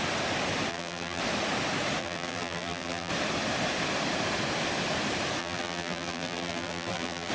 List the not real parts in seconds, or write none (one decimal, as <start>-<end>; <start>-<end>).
0.7-1.2; 2.0-3.1; 5.4-7.3